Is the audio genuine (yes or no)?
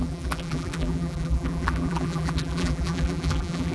no